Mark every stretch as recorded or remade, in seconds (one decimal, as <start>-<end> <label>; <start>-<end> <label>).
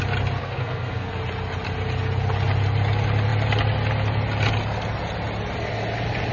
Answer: 0.0-0.4 recorded; 0.4-1.1 remade; 1.1-6.3 recorded